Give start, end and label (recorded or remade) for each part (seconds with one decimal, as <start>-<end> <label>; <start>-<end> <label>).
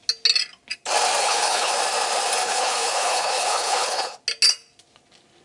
0.0-1.2 recorded; 1.2-1.7 remade; 1.7-2.4 recorded; 2.4-4.2 remade; 4.2-5.4 recorded